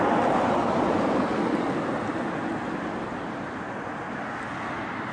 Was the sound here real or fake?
real